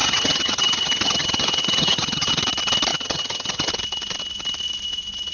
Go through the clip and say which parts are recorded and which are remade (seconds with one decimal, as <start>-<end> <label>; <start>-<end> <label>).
0.0-2.3 remade; 2.3-2.9 recorded; 2.9-3.7 remade; 3.7-5.3 recorded